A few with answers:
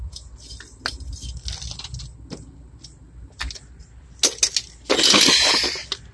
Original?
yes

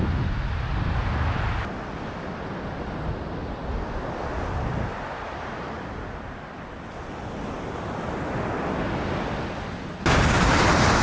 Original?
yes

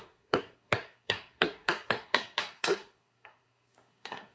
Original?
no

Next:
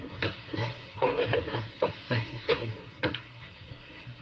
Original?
no